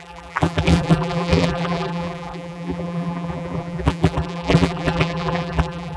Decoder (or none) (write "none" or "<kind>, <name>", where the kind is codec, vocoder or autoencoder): vocoder, BigVGAN v2